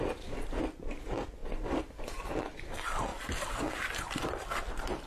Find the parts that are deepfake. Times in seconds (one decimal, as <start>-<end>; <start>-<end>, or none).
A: 0.0-1.4; 2.0-5.1

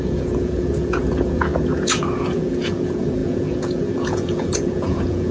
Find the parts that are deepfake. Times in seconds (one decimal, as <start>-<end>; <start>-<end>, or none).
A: 0.0-5.3

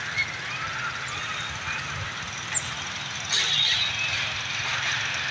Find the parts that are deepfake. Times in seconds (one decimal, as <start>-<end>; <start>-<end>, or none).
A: none